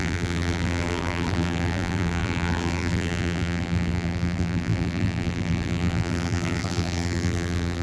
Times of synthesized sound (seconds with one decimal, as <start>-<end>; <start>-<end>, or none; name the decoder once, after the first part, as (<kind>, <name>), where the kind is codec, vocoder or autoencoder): 0.0-7.8 (vocoder, BigVGAN v2)